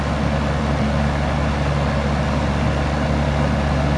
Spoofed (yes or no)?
no